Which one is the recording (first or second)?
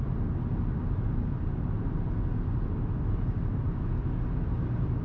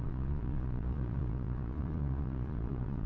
first